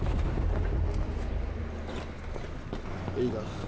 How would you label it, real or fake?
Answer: real